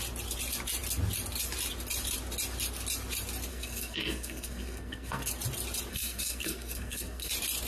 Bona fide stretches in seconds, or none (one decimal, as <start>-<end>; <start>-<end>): 0.0-3.5; 5.3-5.9; 7.3-7.7